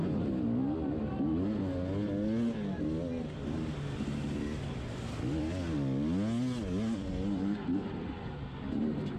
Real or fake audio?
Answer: real